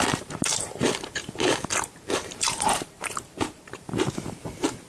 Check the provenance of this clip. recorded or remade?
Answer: remade